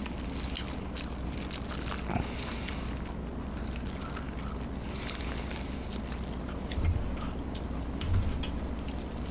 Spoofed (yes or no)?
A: no